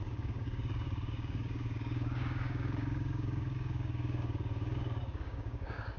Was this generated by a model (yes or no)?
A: yes